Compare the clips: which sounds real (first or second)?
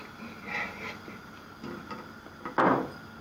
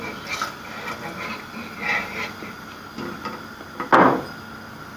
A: second